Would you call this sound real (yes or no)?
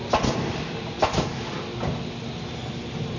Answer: yes